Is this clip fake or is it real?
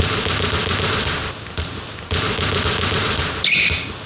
real